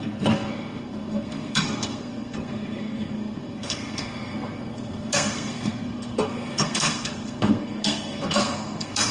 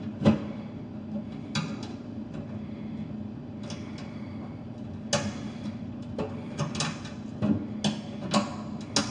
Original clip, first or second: second